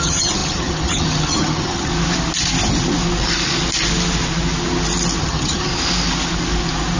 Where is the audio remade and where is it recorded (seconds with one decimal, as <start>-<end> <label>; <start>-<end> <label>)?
0.0-1.9 remade; 1.9-5.2 recorded; 5.2-5.7 remade; 5.7-7.0 recorded